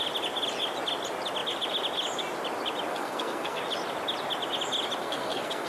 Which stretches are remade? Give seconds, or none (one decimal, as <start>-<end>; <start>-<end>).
2.9-3.6; 5.0-5.7